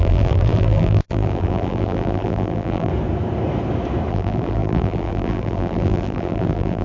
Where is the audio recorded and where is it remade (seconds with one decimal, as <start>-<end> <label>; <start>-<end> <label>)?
0.0-2.9 remade; 2.9-4.1 recorded; 4.1-6.8 remade